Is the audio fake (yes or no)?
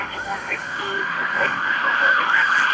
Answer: yes